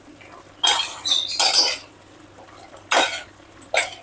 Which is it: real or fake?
real